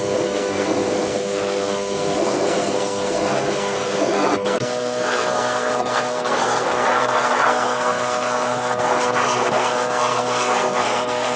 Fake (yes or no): yes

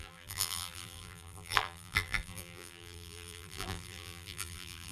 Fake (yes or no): yes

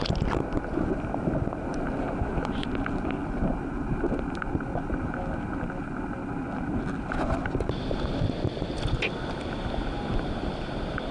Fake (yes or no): no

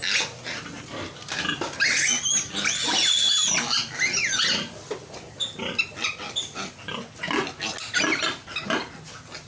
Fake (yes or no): no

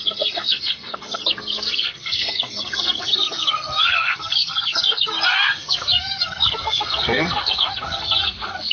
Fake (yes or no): yes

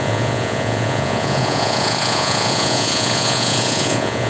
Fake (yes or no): yes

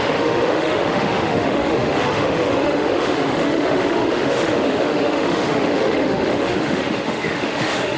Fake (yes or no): yes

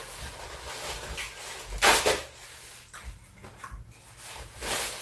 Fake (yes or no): no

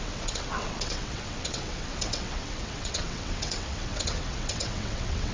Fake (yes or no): yes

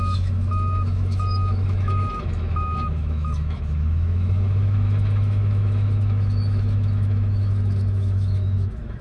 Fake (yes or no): yes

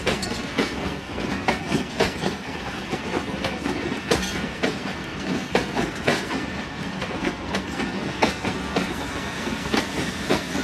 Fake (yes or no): yes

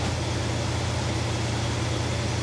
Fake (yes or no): no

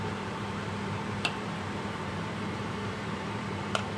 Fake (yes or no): yes